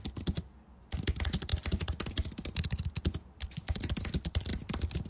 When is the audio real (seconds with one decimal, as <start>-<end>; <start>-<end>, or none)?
0.0-5.1